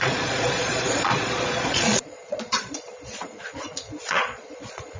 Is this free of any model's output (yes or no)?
no